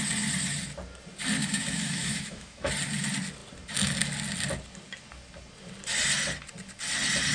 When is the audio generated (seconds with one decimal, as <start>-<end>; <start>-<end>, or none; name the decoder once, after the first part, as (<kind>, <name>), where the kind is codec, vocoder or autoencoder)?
1.4-2.7 (autoencoder, DAC-VAE)